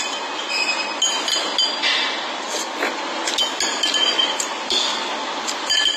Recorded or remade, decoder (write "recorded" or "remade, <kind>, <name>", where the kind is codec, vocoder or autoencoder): recorded